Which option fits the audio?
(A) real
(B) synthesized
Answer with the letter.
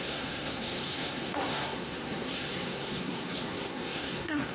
B